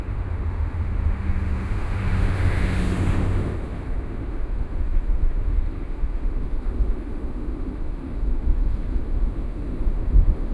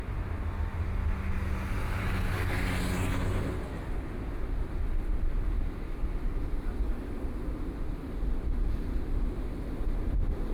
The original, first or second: second